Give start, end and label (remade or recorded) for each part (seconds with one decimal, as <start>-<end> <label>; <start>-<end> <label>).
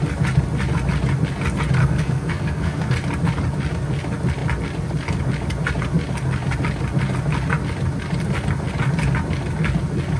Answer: 0.0-1.8 recorded; 1.8-2.9 remade; 2.9-10.2 recorded